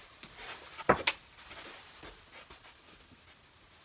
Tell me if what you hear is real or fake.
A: real